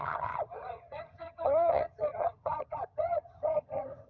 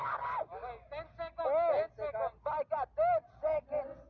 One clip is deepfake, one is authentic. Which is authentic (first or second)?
second